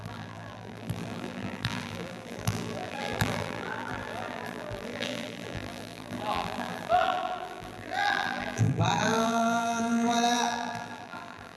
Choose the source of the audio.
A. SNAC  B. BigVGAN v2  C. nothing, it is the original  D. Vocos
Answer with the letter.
B